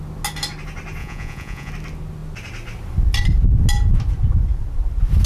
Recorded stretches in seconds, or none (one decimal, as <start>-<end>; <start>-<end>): 0.0-1.0; 1.7-5.3